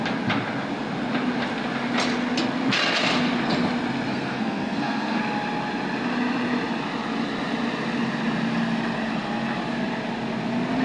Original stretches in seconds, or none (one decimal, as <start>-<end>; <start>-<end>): 0.0-4.1; 5.2-10.8